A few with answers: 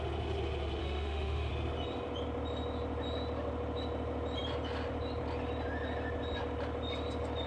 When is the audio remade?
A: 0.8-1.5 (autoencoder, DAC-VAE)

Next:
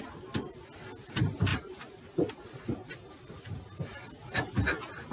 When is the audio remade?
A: none

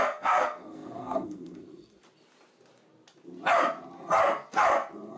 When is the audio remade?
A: 0.0-2.0 (codec, SNAC)